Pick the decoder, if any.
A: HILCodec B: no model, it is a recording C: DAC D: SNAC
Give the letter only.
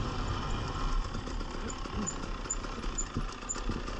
B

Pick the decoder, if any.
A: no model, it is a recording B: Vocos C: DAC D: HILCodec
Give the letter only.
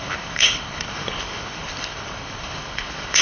D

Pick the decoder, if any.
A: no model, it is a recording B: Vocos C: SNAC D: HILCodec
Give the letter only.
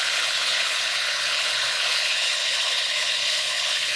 D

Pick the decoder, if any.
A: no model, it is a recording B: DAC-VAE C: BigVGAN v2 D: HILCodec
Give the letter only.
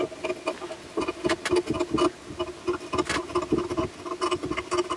A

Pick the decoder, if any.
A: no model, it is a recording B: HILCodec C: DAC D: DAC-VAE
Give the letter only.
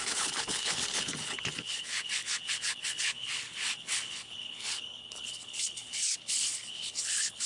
B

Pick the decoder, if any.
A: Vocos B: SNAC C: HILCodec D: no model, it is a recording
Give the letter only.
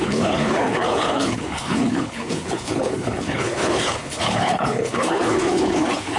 C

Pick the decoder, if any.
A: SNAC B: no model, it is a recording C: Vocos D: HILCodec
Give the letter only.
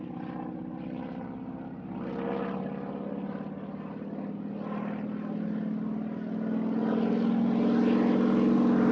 B